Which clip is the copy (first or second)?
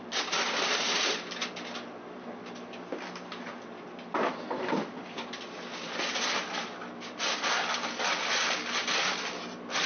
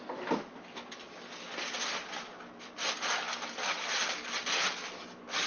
first